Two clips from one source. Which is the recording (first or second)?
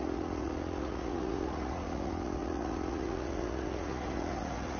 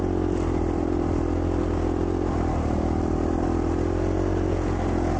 second